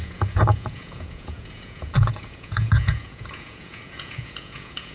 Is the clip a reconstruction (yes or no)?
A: yes